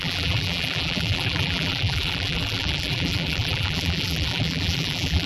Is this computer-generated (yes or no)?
yes